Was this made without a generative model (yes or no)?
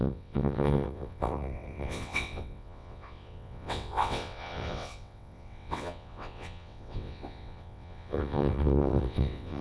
no